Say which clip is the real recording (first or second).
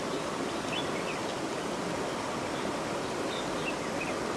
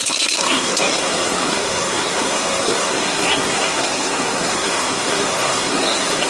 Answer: first